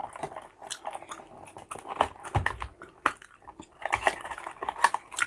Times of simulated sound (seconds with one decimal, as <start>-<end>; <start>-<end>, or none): none